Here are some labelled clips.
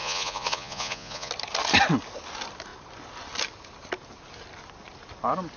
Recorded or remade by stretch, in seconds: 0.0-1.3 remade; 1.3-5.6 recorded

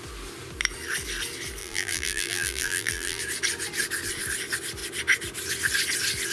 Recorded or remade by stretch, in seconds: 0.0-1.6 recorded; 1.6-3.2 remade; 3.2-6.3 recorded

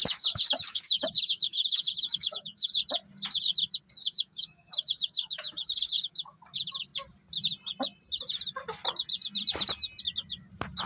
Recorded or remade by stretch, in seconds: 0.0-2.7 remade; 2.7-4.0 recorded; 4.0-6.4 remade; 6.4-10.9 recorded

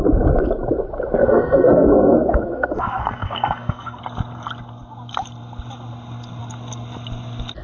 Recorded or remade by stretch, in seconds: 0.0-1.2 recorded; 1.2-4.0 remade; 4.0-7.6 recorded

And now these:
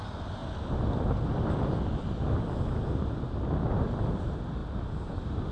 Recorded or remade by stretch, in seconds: 0.0-5.5 recorded

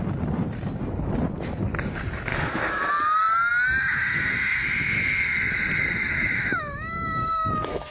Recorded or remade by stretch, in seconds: 0.0-2.3 recorded; 2.3-2.9 remade; 2.9-6.0 recorded; 6.0-7.9 remade

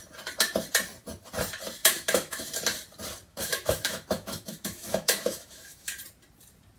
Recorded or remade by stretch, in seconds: 0.0-1.8 recorded; 1.8-2.5 remade; 2.5-3.3 recorded; 3.3-5.9 remade; 5.9-6.8 recorded

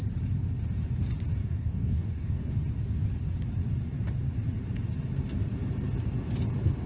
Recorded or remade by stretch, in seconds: 0.0-1.4 recorded; 1.4-2.5 remade; 2.5-6.9 recorded